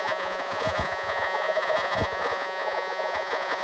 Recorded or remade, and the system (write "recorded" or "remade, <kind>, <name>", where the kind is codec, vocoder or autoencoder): remade, vocoder, Vocos